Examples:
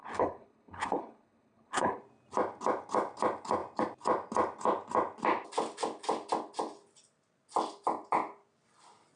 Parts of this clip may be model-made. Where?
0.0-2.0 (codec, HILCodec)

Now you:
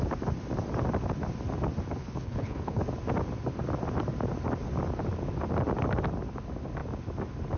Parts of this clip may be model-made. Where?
2.0-2.8 (codec, HILCodec)

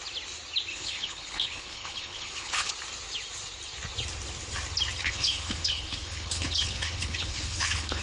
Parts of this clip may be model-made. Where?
0.7-2.7 (codec, HILCodec); 5.0-8.0